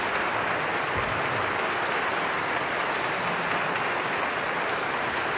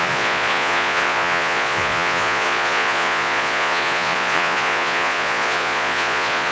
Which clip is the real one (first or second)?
first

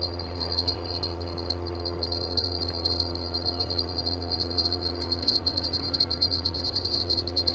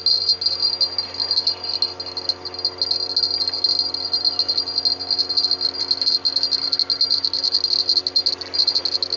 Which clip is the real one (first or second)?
second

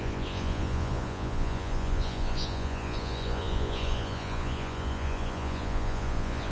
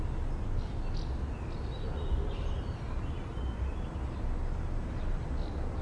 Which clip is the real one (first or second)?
second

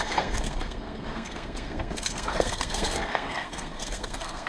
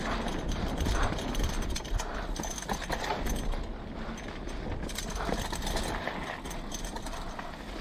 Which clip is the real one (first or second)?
second